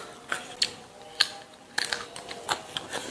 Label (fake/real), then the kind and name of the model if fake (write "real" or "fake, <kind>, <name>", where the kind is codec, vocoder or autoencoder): real